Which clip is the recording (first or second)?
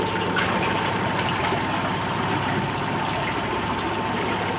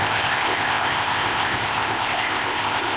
first